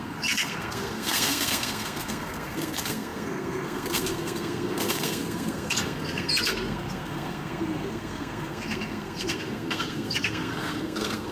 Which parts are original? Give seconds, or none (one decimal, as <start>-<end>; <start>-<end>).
none